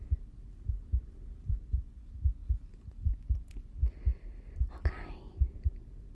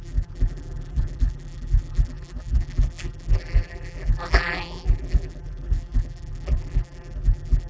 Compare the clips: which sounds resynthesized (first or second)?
second